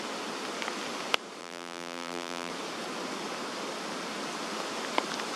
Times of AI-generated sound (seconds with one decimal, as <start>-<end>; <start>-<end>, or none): 1.4-2.5